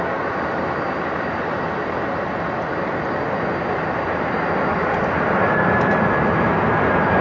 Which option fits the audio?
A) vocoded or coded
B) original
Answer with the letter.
B